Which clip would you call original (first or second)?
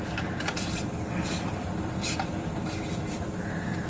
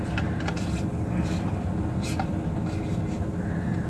second